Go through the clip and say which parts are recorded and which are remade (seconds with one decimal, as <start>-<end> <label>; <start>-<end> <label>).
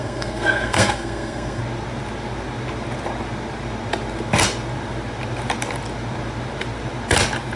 0.0-1.6 remade; 1.6-7.6 recorded